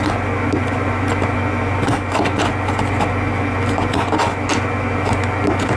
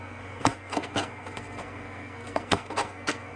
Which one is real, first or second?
first